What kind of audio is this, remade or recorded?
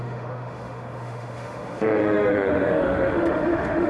remade